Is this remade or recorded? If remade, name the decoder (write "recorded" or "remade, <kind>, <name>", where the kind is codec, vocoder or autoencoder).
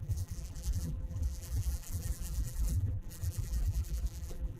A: remade, vocoder, BigVGAN v2